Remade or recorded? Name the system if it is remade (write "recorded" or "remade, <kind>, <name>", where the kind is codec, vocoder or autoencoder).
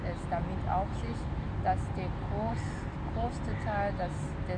recorded